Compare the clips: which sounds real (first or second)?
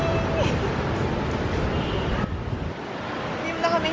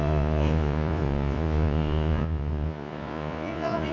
first